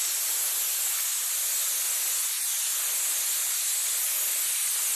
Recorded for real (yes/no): yes